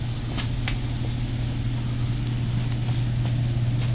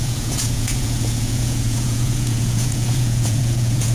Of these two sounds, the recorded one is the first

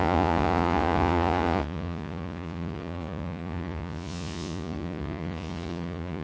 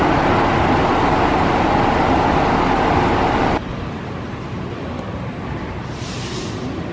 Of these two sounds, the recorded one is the second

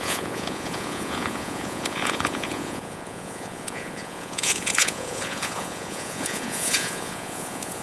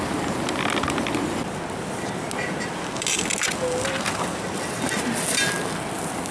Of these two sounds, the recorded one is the second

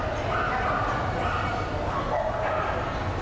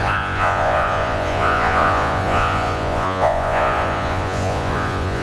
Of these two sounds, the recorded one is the first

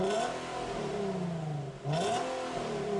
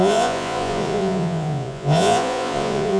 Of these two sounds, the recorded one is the first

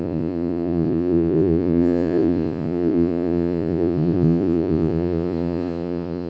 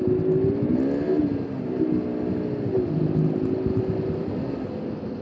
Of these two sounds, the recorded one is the second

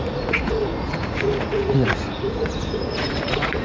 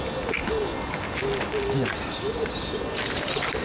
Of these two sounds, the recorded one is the second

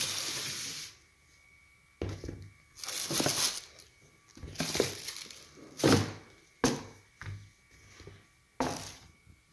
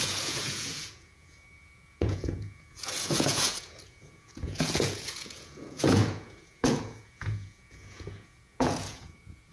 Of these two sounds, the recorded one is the first